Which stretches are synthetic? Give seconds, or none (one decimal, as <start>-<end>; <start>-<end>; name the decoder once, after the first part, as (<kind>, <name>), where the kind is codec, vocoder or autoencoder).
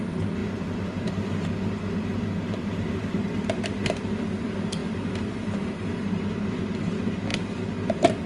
0.0-7.3 (vocoder, BigVGAN v2); 7.9-8.3